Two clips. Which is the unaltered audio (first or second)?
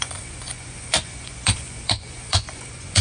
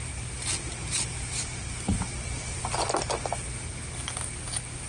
second